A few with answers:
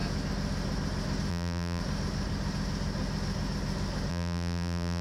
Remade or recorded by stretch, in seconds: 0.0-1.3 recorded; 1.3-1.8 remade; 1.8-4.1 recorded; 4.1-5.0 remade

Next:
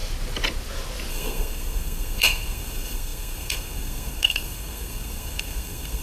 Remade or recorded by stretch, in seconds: 0.0-1.1 recorded; 1.1-6.0 remade